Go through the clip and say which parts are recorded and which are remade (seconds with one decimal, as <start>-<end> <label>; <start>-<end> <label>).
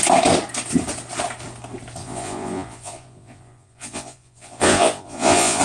0.0-2.0 recorded; 2.0-5.6 remade